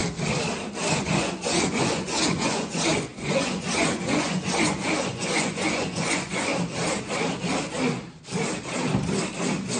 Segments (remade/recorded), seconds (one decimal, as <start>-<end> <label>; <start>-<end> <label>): 0.0-0.9 recorded; 0.9-6.5 remade; 6.5-9.8 recorded